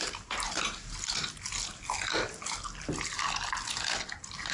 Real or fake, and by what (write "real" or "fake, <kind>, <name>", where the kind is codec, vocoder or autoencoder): real